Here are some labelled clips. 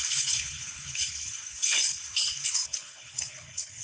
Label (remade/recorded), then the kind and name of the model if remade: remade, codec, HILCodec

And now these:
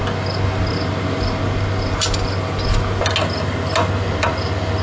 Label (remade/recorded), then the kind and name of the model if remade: recorded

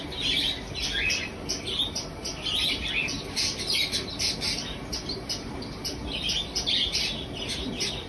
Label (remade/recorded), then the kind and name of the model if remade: recorded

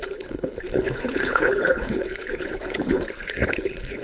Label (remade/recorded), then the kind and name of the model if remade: remade, codec, HILCodec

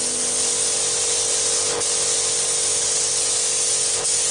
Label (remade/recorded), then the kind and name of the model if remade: recorded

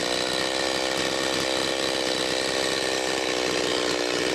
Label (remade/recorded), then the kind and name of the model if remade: recorded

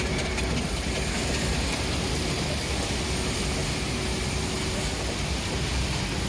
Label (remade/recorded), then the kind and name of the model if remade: recorded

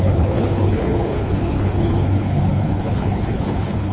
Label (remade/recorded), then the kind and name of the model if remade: remade, codec, HILCodec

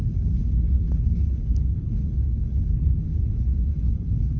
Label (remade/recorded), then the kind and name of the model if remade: remade, codec, HILCodec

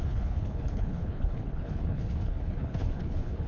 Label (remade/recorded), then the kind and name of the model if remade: remade, codec, HILCodec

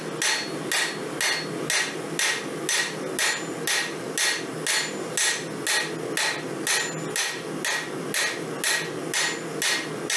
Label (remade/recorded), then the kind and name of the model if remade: recorded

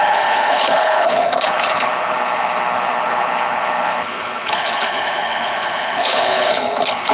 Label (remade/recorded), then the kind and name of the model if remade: remade, codec, HILCodec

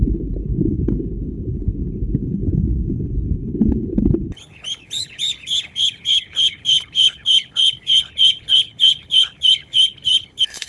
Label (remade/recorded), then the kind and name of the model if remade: remade, codec, HILCodec